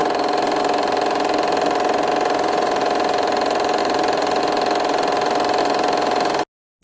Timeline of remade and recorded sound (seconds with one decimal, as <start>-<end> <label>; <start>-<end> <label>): 0.0-3.8 recorded; 3.8-4.4 remade; 4.4-6.8 recorded